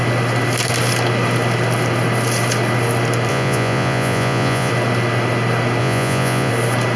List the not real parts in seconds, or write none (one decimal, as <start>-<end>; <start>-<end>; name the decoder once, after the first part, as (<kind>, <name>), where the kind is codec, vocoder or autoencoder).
3.3-4.7 (vocoder, Vocos); 5.8-6.5